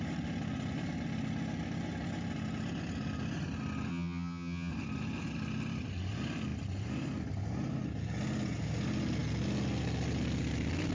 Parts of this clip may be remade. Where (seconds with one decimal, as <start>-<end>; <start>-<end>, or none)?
3.9-4.7